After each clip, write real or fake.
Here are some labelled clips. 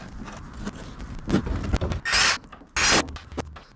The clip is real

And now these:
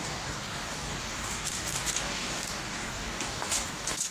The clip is fake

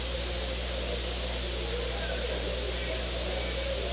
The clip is real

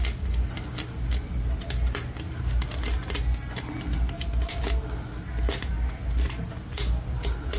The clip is real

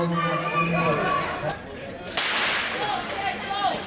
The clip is real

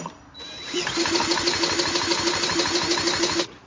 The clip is real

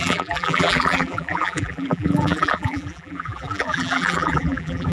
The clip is fake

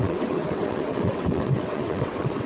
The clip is fake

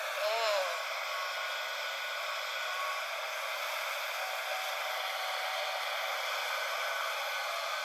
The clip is real